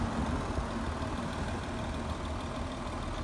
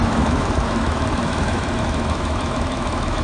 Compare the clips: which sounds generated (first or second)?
second